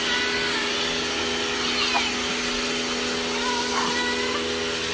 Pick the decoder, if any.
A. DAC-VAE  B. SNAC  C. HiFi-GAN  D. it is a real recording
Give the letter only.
D